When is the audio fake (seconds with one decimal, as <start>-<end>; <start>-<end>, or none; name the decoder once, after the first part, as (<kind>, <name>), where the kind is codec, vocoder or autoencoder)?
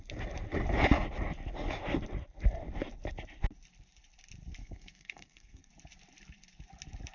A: 4.6-5.7 (codec, SNAC)